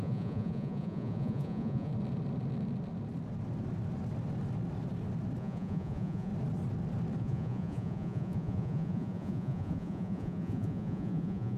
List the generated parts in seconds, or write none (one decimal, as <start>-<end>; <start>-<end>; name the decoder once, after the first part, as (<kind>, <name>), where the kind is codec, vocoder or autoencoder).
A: 0.0-1.9 (vocoder, Vocos); 5.4-6.3; 7.2-11.6